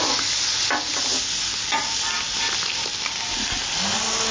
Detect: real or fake real